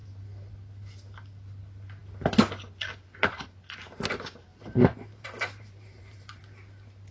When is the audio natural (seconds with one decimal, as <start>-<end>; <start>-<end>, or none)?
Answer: 0.0-4.5; 6.4-7.1